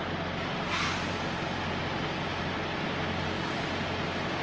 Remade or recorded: recorded